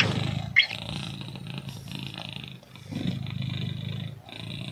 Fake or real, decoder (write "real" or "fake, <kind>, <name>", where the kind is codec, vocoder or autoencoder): real